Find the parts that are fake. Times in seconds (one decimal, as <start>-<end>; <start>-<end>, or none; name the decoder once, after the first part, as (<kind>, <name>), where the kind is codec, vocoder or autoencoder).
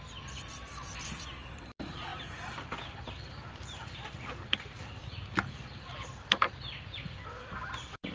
0.0-8.1 (vocoder, BigVGAN v2)